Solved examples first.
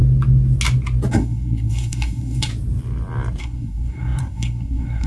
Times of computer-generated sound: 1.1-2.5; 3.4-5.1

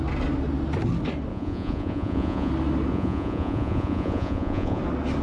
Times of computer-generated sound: 1.3-2.5; 2.9-4.8

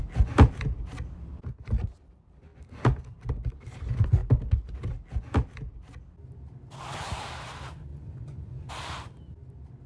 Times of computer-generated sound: 7.9-8.7

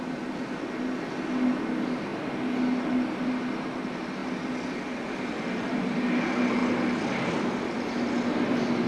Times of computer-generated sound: none

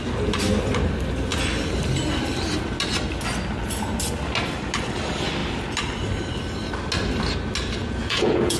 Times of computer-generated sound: 7.8-8.6

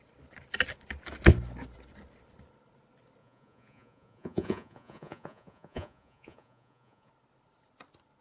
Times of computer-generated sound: 3.2-7.1

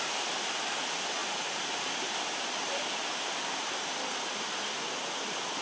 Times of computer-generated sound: 1.2-4.6

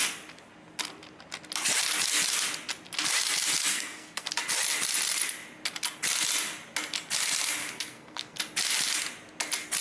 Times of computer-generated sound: 3.7-4.3; 7.6-8.4